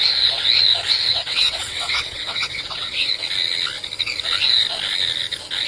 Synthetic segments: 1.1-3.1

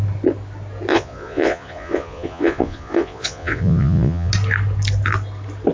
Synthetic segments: 0.9-4.3

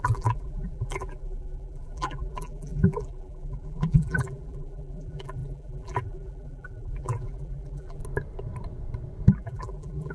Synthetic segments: 0.0-8.0; 9.3-10.1

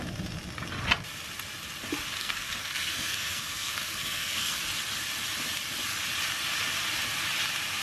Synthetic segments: 2.2-4.6

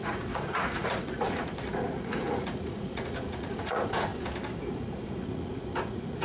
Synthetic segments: 0.0-4.1; 4.6-6.2

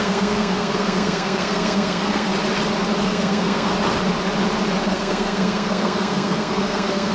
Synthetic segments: 0.0-2.3; 3.0-3.7; 4.8-7.1